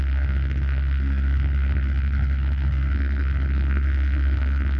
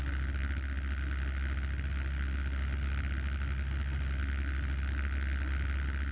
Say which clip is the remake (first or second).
first